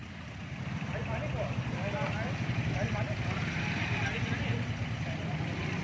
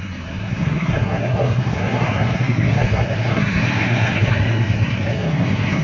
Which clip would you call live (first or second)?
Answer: first